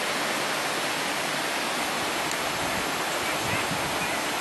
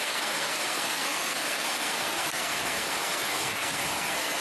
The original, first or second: first